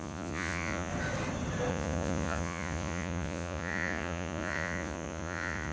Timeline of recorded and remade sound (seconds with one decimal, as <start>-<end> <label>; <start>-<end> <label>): 0.0-0.9 remade; 0.9-1.7 recorded; 1.7-5.7 remade